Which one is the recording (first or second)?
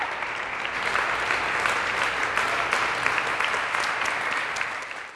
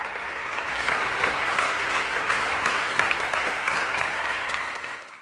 first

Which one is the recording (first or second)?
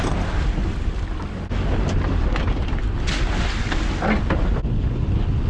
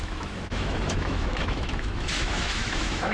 first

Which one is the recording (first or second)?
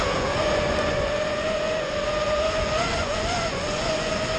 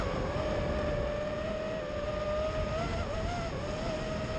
second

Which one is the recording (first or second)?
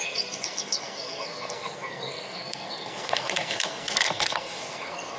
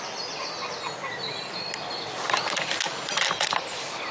second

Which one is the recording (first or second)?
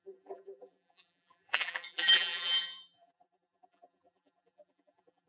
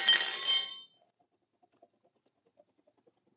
second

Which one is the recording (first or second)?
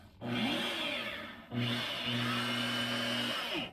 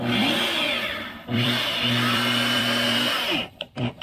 first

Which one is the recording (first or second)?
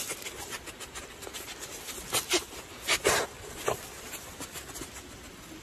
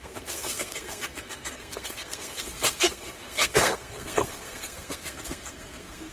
first